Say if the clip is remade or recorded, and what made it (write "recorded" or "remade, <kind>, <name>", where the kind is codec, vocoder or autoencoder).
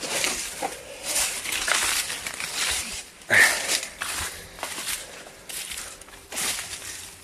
remade, vocoder, BigVGAN v2